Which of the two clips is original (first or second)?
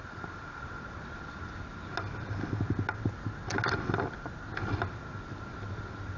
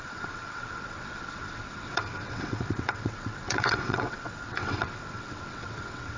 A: first